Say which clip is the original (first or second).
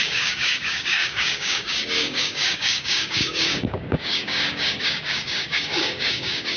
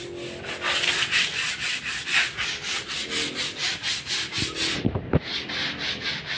second